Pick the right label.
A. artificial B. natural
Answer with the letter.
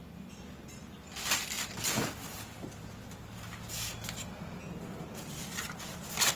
B